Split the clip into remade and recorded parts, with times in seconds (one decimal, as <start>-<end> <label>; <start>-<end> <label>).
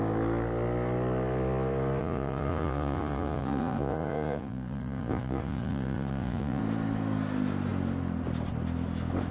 0.0-2.0 recorded; 2.0-6.6 remade; 6.6-9.3 recorded